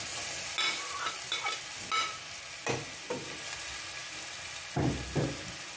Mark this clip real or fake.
real